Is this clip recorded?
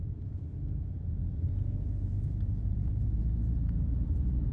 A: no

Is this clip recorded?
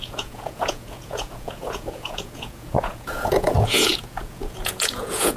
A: no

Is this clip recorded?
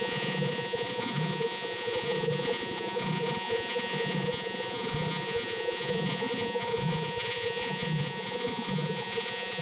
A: no